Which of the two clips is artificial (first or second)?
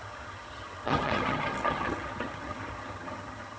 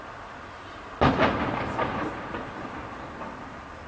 first